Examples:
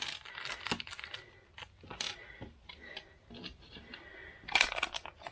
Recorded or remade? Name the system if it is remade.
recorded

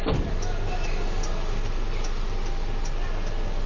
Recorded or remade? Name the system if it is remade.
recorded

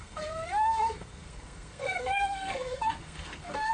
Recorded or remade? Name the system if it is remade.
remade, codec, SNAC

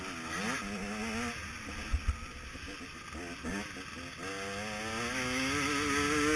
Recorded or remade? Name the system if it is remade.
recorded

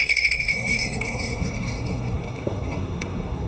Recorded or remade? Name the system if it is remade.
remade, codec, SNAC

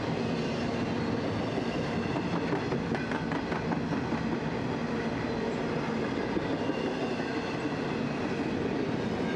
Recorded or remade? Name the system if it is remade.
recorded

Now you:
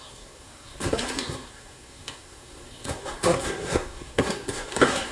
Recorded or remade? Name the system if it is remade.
remade, codec, SNAC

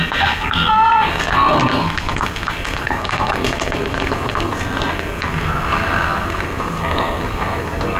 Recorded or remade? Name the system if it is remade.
remade, codec, SNAC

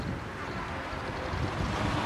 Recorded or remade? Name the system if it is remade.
recorded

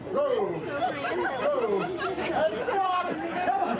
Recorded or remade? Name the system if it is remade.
recorded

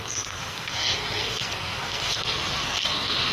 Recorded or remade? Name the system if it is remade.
remade, codec, SNAC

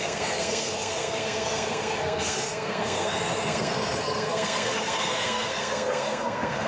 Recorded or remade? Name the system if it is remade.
remade, codec, SNAC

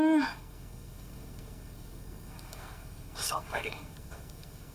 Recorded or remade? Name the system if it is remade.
remade, codec, SNAC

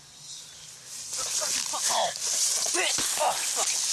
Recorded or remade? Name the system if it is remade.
recorded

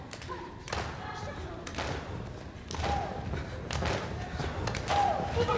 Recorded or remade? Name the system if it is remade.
recorded